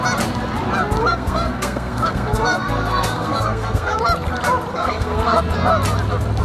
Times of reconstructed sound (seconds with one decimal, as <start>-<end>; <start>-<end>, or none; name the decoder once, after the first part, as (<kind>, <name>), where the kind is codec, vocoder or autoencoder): 1.0-4.0 (codec, SNAC); 4.7-5.4